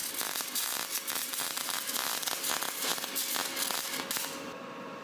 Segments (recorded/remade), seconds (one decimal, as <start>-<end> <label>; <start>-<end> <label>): 0.0-5.0 recorded